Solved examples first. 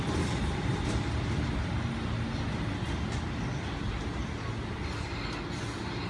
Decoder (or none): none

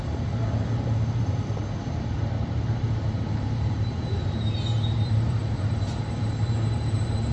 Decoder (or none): vocoder, BigVGAN v2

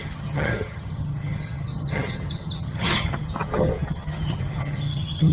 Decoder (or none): vocoder, HiFi-GAN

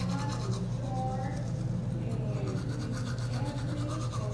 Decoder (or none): none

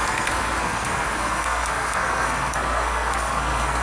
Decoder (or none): codec, SNAC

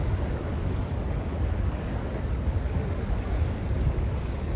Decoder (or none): codec, DAC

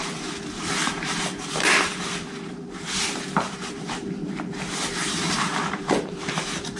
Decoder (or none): vocoder, BigVGAN v2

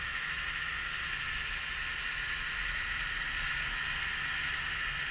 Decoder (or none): none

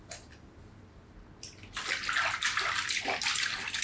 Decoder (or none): none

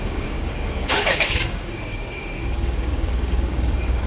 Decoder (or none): codec, DAC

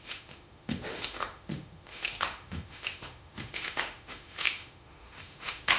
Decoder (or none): autoencoder, DAC-VAE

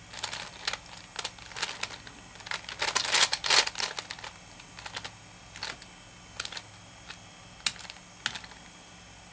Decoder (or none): none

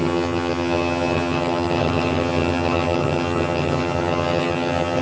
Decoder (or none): vocoder, HiFi-GAN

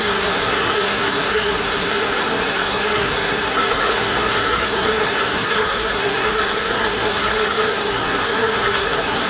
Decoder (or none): codec, SNAC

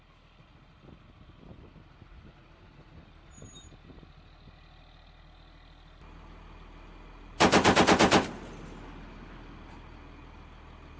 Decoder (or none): none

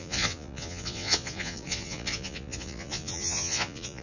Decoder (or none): vocoder, Vocos